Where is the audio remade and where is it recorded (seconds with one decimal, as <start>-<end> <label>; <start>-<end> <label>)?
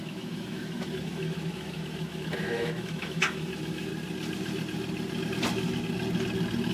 0.0-3.9 remade; 3.9-6.7 recorded